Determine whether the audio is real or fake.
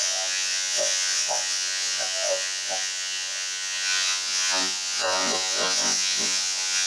fake